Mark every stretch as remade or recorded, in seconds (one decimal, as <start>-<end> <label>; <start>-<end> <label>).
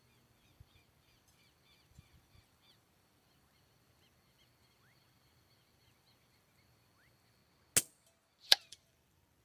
0.0-7.4 remade; 7.4-8.4 recorded; 8.4-9.4 remade